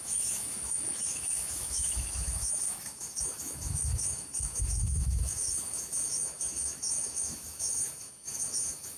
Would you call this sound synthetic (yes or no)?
yes